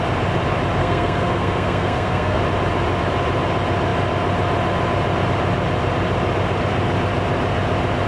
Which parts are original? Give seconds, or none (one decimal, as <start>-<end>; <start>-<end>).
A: 0.0-0.8; 2.4-8.1